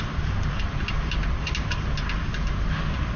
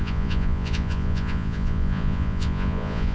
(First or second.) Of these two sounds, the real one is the first